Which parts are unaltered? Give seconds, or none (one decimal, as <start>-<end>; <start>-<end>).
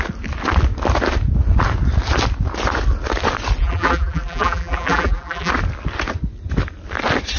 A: 0.0-3.6; 5.5-7.4